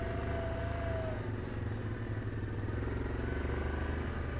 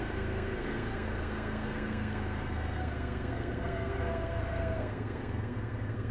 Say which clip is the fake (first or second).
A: second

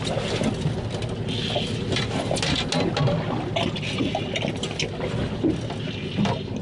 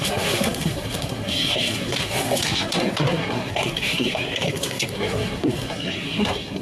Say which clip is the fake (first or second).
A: second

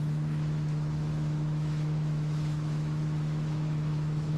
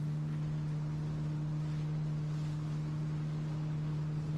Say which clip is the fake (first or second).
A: first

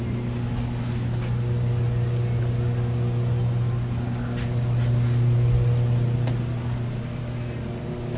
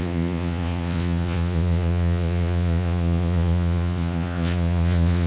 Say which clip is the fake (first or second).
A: second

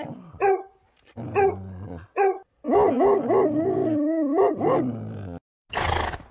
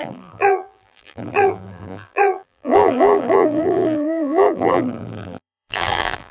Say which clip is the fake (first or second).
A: second